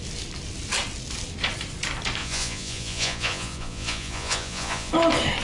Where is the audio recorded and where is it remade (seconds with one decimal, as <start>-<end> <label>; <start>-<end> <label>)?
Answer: 0.0-2.2 recorded; 2.2-4.9 remade; 4.9-5.4 recorded